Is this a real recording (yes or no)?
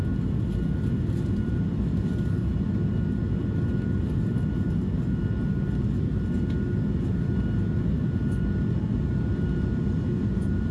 yes